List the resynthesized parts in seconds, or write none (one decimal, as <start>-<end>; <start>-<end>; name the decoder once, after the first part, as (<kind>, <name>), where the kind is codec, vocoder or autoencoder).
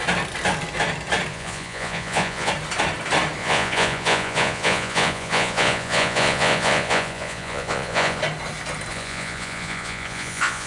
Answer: 1.3-2.5 (vocoder, Vocos); 3.4-8.2; 8.9-10.7